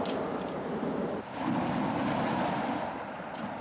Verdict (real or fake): real